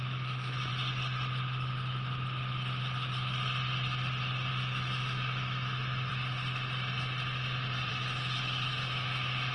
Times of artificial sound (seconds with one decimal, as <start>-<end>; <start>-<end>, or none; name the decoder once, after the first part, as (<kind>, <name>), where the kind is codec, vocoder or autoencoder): 0.0-0.7 (autoencoder, DAC-VAE); 4.5-6.1; 7.9-9.5

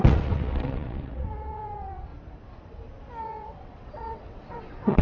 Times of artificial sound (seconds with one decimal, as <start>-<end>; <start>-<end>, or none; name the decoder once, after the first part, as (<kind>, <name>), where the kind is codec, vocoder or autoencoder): 0.0-2.1 (vocoder, WaveNeXt); 3.2-5.0